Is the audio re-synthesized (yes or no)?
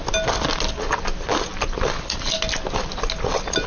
no